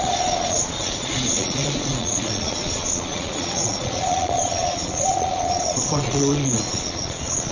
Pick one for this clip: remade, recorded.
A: remade